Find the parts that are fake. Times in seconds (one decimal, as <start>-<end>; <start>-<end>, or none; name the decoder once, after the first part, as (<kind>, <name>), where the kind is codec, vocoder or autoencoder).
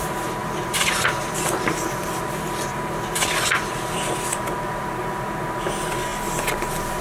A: 0.4-4.6 (vocoder, BigVGAN v2); 6.1-7.0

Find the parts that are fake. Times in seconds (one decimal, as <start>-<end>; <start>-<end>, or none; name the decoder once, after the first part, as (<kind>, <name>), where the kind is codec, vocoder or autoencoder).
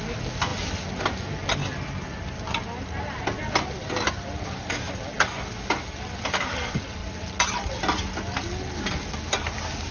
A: none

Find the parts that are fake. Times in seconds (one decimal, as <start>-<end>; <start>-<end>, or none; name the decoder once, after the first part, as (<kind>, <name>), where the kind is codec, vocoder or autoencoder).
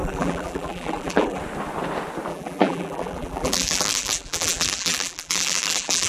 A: 0.0-1.4 (vocoder, BigVGAN v2); 2.3-6.1